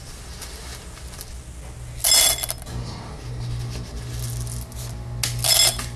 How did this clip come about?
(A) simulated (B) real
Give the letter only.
B